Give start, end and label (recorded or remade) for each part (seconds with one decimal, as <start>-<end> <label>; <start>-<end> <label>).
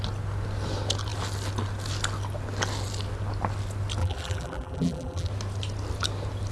0.0-4.0 recorded; 4.0-5.3 remade; 5.3-6.5 recorded